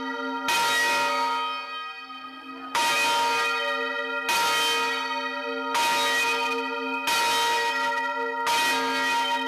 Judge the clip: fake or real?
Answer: real